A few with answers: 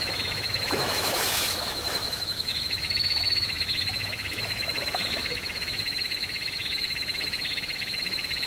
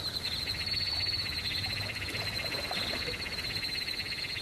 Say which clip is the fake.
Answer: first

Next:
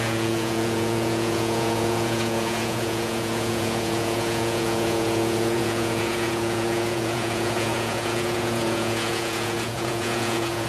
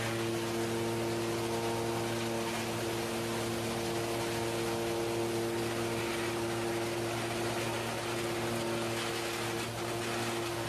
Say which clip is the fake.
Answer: first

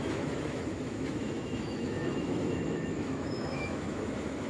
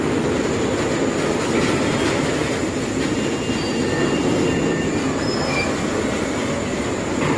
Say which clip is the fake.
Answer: first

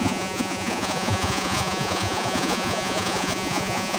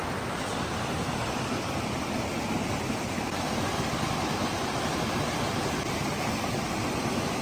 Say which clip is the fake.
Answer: first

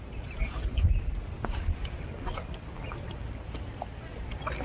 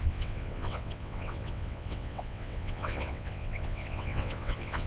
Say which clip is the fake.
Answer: second